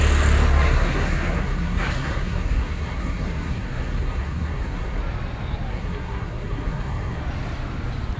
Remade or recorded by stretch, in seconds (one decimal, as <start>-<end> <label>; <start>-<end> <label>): 0.0-0.5 recorded; 0.5-5.0 remade; 5.0-5.7 recorded; 5.7-7.2 remade; 7.2-8.2 recorded